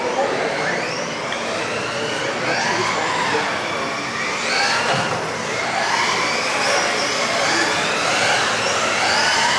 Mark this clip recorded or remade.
recorded